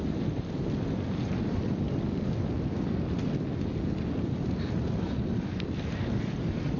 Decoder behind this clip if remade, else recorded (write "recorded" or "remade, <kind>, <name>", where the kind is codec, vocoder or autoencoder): recorded